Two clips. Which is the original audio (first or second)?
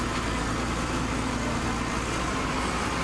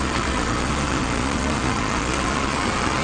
first